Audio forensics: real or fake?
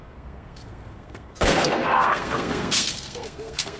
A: fake